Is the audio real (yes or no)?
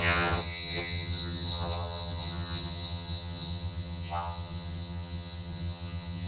no